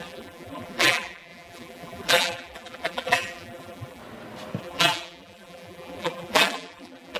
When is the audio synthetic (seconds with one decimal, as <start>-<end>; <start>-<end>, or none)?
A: 0.0-4.0; 4.6-7.2